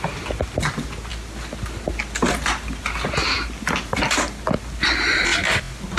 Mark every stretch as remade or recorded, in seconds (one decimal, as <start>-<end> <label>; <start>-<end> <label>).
0.0-6.0 recorded